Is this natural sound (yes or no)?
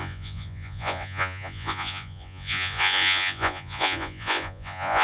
no